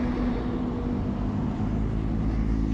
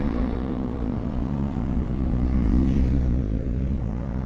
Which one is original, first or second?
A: first